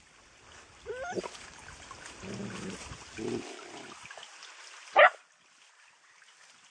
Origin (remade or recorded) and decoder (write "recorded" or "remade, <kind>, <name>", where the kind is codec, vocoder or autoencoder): recorded